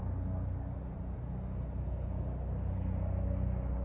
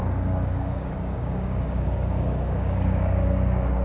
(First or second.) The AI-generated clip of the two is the second